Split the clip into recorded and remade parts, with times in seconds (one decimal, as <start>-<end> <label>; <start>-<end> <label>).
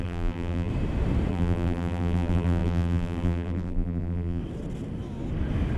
0.0-0.7 remade; 0.7-1.3 recorded; 1.3-4.4 remade; 4.4-5.8 recorded